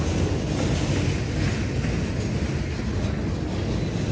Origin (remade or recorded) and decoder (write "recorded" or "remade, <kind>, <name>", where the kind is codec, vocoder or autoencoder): recorded